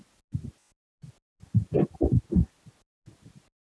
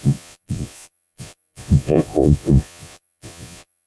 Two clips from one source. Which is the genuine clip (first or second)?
first